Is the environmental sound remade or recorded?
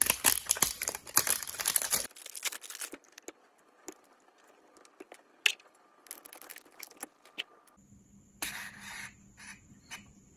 recorded